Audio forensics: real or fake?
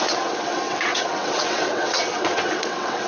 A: fake